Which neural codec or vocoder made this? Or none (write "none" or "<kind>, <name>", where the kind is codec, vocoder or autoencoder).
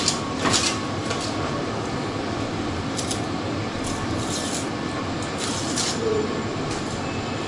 none